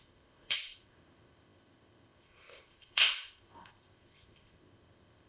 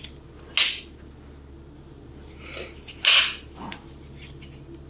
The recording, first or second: second